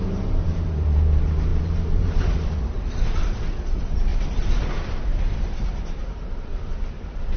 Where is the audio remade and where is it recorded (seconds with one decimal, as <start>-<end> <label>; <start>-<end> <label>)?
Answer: 0.0-4.1 remade; 4.1-5.6 recorded; 5.6-7.4 remade